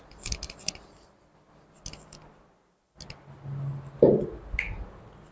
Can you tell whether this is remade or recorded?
recorded